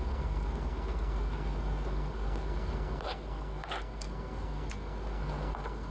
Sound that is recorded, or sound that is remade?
remade